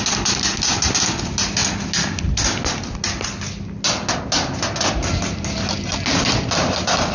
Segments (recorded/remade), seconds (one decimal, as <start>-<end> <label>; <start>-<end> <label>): 0.0-7.1 recorded